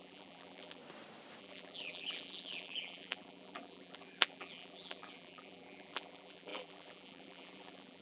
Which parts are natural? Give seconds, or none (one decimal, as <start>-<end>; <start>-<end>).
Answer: 0.8-1.4

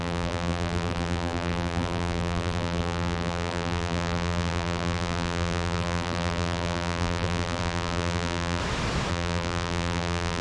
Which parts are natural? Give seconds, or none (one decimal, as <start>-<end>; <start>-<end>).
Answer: 8.6-9.1